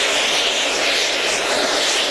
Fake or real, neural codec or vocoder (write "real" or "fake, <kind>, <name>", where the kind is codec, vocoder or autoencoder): real